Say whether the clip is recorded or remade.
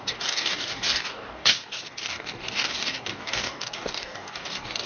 remade